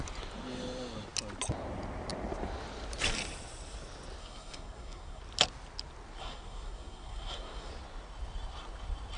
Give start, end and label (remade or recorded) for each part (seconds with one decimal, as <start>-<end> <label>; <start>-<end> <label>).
0.0-4.2 recorded; 4.2-5.2 remade; 5.2-6.2 recorded; 6.2-7.7 remade; 7.7-9.2 recorded